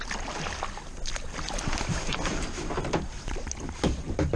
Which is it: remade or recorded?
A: recorded